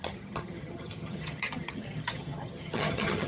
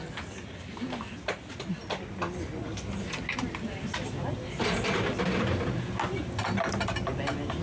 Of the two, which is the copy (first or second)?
first